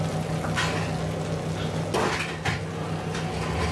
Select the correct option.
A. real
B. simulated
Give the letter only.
A